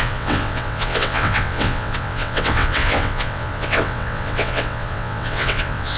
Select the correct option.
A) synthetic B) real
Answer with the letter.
A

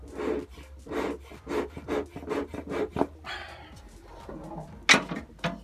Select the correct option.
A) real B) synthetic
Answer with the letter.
A